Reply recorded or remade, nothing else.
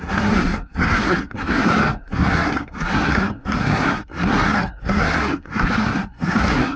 remade